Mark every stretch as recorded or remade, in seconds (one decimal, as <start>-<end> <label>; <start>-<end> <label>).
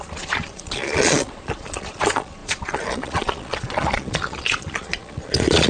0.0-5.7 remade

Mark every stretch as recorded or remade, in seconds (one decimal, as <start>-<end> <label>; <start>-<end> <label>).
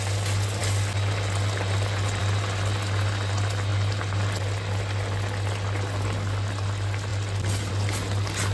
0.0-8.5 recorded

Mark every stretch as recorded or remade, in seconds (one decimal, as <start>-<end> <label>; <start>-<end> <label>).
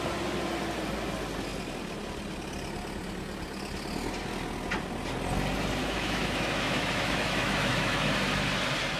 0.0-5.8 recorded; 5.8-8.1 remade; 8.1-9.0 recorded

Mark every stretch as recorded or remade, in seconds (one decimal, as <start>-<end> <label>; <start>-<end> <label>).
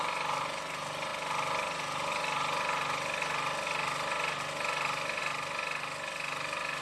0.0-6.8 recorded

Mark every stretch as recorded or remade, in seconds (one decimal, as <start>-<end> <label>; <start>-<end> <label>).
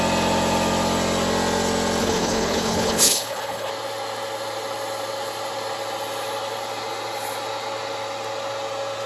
0.0-2.0 recorded; 2.0-3.7 remade; 3.7-9.1 recorded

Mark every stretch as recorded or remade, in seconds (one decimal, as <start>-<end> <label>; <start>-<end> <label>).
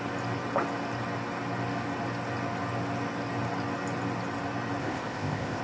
0.0-4.8 recorded; 4.8-5.6 remade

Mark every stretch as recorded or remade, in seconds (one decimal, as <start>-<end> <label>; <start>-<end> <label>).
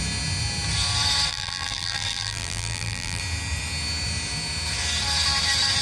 0.0-1.3 recorded; 1.3-3.2 remade; 3.2-5.8 recorded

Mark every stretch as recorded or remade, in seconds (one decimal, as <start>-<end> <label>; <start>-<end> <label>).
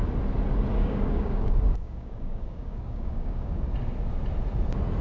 0.0-0.7 recorded; 0.7-3.7 remade; 3.7-5.0 recorded